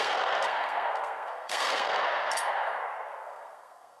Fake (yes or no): yes